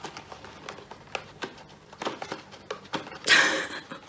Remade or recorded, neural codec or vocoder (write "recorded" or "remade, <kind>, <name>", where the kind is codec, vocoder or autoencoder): recorded